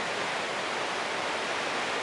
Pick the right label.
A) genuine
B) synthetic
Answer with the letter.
A